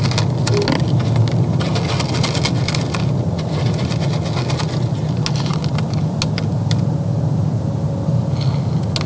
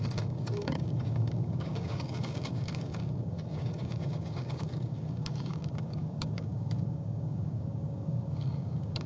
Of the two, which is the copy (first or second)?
second